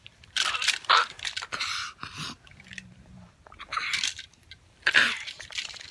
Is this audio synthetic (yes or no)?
yes